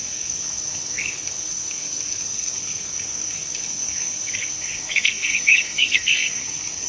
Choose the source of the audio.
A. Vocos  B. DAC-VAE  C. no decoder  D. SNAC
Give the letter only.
D